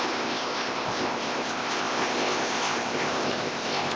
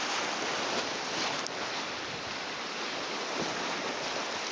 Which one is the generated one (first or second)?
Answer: first